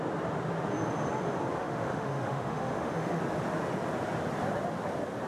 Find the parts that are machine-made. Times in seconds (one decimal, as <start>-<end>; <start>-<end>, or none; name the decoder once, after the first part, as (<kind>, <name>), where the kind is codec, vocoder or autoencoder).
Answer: 1.6-3.2 (autoencoder, DAC-VAE)

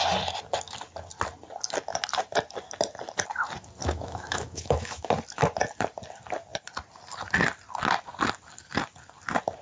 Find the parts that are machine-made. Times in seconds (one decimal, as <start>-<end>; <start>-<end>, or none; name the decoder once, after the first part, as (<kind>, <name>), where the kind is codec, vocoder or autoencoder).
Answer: 3.8-5.1 (autoencoder, DAC-VAE)

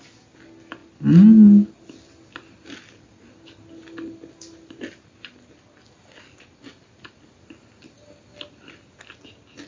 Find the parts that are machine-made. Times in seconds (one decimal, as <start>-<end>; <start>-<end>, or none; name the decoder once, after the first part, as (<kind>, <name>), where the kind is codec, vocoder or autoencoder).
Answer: none

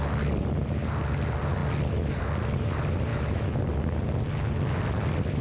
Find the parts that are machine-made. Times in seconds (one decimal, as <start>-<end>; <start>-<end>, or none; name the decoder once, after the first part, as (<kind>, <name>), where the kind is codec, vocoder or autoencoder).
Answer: 3.1-3.6 (autoencoder, DAC-VAE)

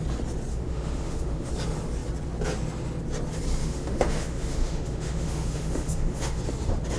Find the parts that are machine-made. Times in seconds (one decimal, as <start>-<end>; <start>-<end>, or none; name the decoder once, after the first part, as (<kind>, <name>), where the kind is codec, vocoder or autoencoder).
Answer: 0.5-1.5 (autoencoder, DAC-VAE); 3.6-6.4

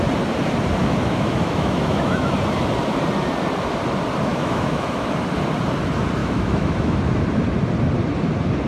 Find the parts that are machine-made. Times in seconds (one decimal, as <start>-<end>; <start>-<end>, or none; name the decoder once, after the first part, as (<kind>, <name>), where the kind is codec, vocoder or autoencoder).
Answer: 0.8-2.3 (autoencoder, DAC-VAE); 4.3-5.1; 6.2-7.0

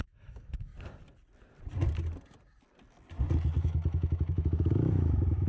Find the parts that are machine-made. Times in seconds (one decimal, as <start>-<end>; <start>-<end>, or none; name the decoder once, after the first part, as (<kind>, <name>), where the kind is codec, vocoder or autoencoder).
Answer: 0.0-0.7 (autoencoder, DAC-VAE); 3.6-5.5

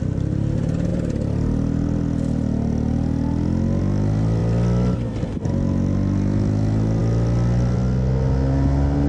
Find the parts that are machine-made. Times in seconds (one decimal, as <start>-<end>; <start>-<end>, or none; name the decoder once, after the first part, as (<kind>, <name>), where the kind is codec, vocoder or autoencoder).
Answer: none